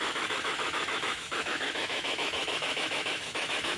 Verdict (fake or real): fake